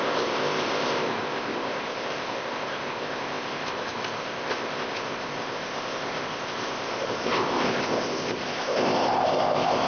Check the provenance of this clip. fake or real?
fake